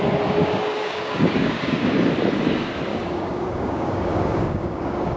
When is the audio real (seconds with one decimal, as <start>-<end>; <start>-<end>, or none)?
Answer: 0.0-0.4; 1.9-2.9